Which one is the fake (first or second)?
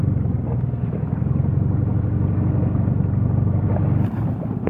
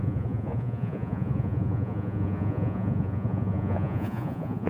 second